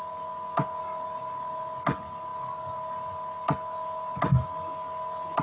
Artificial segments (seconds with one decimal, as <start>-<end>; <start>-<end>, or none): none